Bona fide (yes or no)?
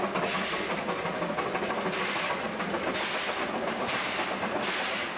yes